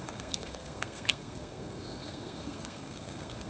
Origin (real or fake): fake